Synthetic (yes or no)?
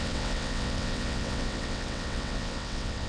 yes